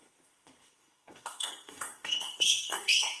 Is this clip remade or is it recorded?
remade